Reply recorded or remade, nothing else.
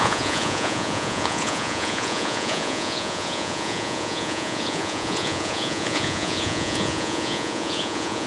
remade